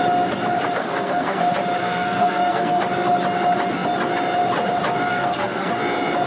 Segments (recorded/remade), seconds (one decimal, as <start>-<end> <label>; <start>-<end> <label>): 0.0-0.8 recorded; 0.8-1.4 remade; 1.4-1.8 recorded; 1.8-2.8 remade; 2.8-5.1 recorded; 5.1-5.7 remade; 5.7-6.3 recorded